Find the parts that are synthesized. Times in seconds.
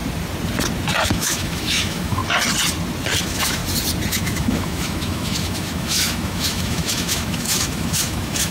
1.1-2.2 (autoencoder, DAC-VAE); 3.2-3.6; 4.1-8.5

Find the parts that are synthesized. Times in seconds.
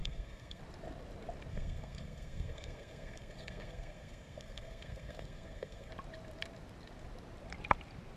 0.0-0.6 (codec, SNAC); 1.5-5.9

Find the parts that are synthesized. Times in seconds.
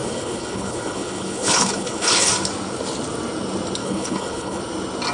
0.0-2.3 (codec, HILCodec); 3.8-4.6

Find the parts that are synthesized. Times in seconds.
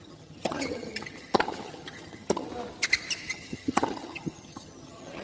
0.0-2.5 (vocoder, HiFi-GAN); 3.3-5.2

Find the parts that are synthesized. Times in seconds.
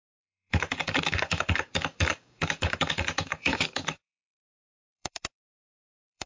0.0-6.3 (codec, DAC)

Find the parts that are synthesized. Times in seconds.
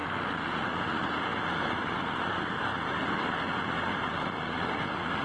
none